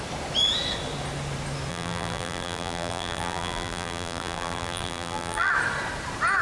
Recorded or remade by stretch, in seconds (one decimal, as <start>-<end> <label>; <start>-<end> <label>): 0.0-1.7 recorded; 1.7-5.5 remade; 5.5-6.4 recorded